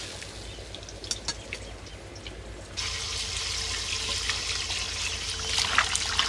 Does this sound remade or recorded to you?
recorded